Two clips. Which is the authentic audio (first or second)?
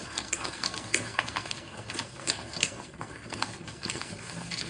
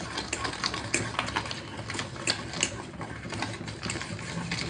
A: second